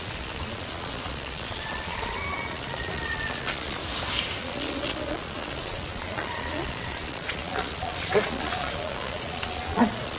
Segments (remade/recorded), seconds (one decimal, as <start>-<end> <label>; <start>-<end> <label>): 0.0-3.8 remade; 3.8-4.4 recorded; 4.4-10.2 remade